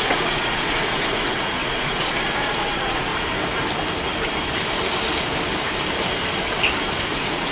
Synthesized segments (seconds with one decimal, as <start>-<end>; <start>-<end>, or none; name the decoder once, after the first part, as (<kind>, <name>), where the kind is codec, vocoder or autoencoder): 0.0-3.1 (vocoder, Vocos); 7.0-7.5

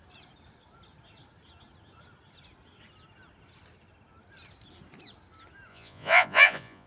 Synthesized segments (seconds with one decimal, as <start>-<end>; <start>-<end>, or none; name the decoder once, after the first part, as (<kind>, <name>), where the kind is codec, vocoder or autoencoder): 5.7-6.9 (vocoder, Vocos)

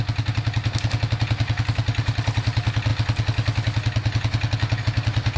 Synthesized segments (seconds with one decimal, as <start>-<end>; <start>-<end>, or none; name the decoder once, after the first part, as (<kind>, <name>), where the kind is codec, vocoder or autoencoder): none